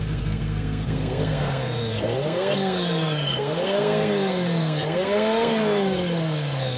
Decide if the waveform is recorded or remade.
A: remade